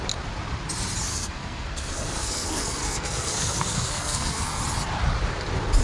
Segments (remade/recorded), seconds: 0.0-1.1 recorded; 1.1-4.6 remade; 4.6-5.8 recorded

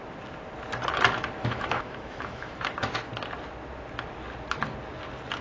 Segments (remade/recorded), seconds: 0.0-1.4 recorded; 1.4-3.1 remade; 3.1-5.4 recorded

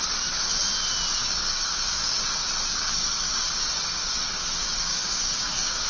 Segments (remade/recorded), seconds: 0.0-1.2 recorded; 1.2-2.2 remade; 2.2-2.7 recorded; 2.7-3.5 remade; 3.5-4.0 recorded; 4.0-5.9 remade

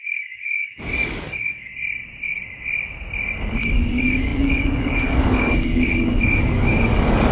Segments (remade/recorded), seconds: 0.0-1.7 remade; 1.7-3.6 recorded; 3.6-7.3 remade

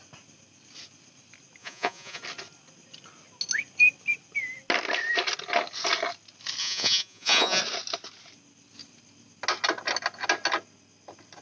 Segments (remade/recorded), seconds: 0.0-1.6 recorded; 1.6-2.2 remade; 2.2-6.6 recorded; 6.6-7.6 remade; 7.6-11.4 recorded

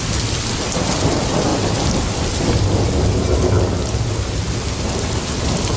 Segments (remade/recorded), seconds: 0.0-5.8 recorded

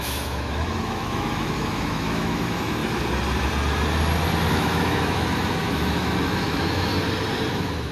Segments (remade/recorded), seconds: 0.0-2.8 remade; 2.8-4.5 recorded; 4.5-6.9 remade; 6.9-7.5 recorded; 7.5-7.9 remade

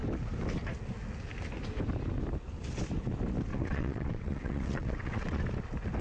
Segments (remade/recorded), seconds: 0.0-3.5 recorded; 3.5-5.4 remade; 5.4-6.0 recorded